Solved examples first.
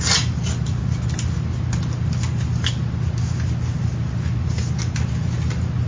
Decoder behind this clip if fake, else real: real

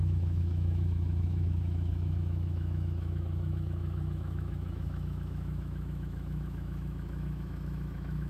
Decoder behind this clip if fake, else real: fake, autoencoder, DAC-VAE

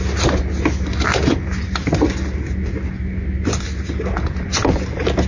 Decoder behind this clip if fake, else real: real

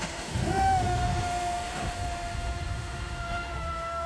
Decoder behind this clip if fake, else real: fake, autoencoder, DAC-VAE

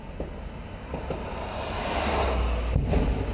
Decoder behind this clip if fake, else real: real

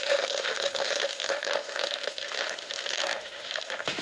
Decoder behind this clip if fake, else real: fake, autoencoder, DAC-VAE